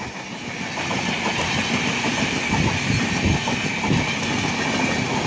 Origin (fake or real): real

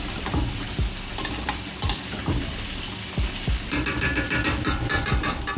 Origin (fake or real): fake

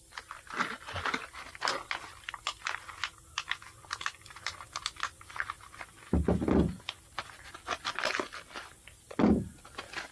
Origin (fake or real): real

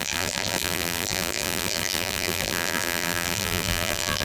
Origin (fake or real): fake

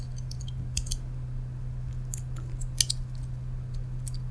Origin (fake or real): real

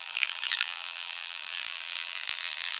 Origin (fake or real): fake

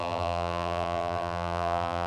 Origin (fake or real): fake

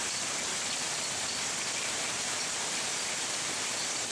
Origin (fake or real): fake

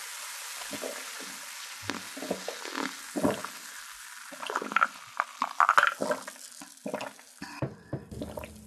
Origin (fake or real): real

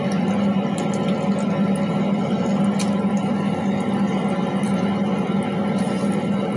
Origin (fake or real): real